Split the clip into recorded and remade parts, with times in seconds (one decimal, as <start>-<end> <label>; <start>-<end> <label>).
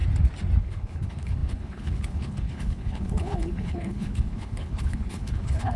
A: 0.0-0.6 recorded; 0.6-5.8 remade